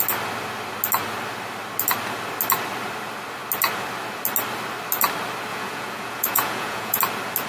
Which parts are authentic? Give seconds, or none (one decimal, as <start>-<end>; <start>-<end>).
0.0-5.5; 7.0-7.5